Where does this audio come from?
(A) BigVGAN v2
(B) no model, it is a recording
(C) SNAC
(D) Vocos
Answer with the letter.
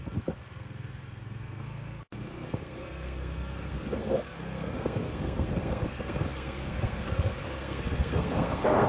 C